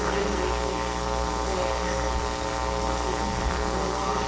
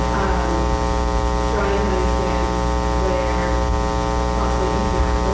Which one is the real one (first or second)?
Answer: second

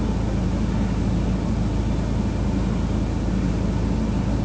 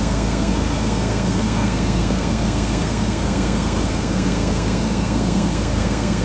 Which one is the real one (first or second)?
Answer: first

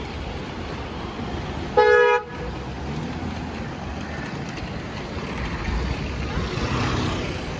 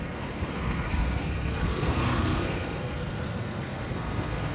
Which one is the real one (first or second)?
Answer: first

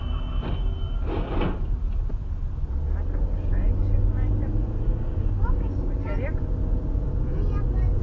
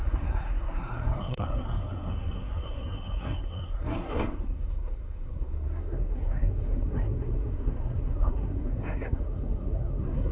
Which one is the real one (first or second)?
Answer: first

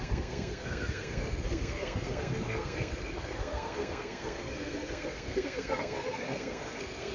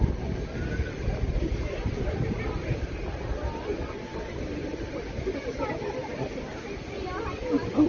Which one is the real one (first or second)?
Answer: second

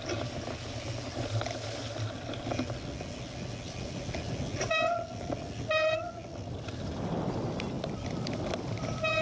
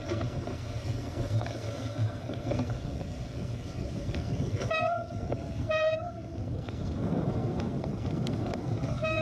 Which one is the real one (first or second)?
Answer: first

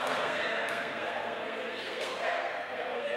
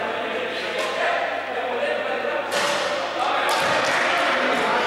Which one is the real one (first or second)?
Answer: second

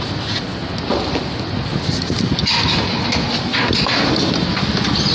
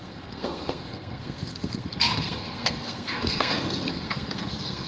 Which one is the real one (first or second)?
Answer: first